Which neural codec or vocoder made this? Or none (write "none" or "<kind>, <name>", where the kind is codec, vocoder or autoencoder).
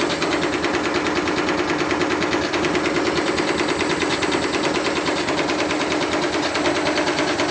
none